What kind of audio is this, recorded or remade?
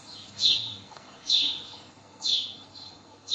remade